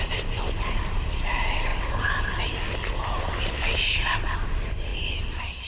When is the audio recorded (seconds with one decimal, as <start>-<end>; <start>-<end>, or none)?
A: 4.9-5.7

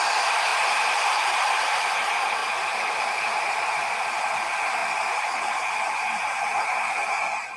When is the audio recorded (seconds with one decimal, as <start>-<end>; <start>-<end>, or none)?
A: 0.0-0.5; 1.9-2.4; 3.9-7.6